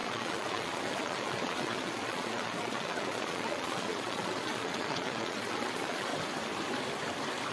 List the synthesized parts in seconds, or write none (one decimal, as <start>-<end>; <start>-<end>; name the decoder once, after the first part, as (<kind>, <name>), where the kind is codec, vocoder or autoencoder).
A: 0.0-6.1 (vocoder, Vocos)